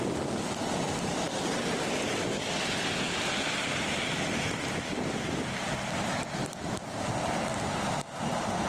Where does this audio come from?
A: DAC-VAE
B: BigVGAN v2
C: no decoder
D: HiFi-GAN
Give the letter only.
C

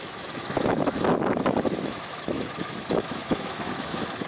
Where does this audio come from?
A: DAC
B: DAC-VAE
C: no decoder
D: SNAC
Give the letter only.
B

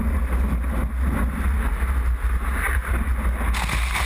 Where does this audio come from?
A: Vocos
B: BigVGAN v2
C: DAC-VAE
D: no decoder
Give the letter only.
D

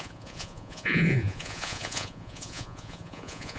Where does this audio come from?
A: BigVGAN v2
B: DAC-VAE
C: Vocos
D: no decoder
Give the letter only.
C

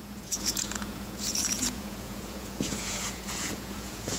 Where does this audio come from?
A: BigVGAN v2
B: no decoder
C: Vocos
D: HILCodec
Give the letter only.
C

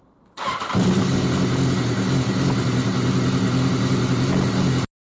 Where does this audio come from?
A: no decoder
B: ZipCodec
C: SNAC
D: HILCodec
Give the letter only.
A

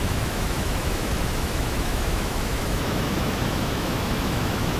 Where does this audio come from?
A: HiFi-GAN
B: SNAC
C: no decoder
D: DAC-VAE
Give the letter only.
D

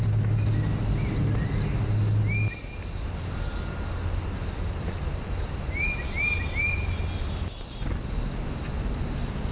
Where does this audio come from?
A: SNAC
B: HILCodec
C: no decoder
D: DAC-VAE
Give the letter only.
C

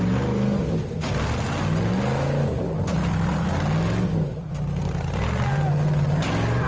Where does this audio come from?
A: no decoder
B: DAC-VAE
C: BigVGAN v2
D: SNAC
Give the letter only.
A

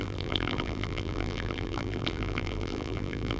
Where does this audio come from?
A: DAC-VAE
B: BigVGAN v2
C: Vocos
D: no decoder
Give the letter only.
B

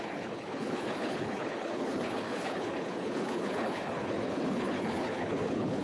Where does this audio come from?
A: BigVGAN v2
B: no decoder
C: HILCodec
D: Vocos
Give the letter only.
C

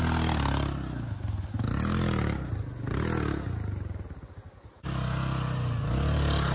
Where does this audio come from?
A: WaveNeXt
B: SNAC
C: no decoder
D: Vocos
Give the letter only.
C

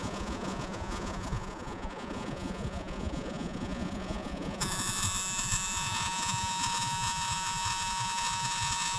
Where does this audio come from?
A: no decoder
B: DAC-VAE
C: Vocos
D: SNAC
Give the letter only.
C